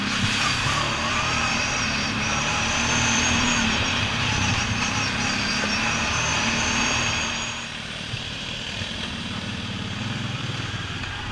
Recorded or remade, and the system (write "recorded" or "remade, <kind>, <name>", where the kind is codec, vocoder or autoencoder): remade, vocoder, BigVGAN v2